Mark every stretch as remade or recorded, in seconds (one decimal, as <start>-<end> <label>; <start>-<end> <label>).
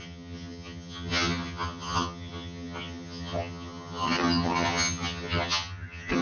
0.0-6.2 remade